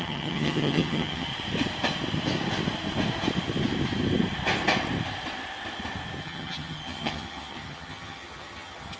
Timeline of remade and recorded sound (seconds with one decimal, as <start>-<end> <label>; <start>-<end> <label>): 0.0-1.3 remade; 1.3-6.2 recorded; 6.2-9.0 remade